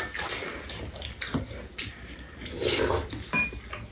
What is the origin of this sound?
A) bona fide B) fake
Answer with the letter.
A